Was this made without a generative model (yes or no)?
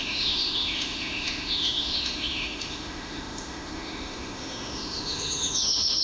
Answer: no